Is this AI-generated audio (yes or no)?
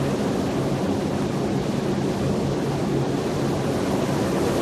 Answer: no